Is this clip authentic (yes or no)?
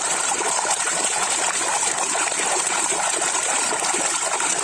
no